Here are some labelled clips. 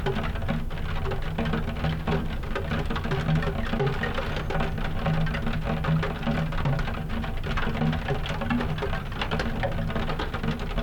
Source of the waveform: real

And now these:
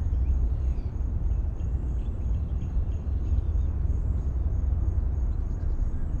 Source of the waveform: fake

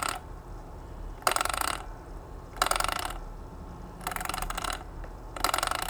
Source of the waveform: real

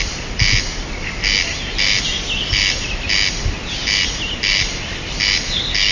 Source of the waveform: real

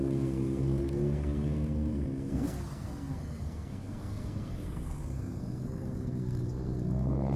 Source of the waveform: fake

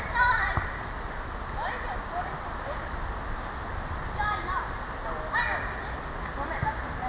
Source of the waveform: real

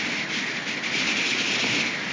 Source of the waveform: real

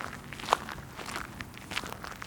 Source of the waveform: real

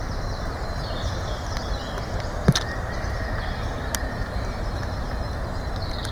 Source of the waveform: fake